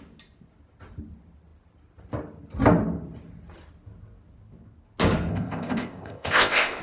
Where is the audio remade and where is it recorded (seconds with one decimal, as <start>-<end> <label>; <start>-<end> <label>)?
0.0-5.3 recorded; 5.3-6.8 remade